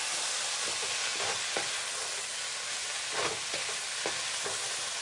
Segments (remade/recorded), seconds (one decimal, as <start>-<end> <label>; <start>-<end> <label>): 0.0-5.0 recorded